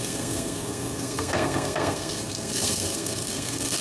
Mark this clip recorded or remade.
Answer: remade